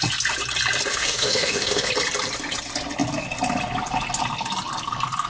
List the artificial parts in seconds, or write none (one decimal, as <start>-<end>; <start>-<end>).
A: 0.9-1.9